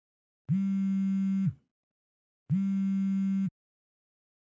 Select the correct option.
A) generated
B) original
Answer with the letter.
B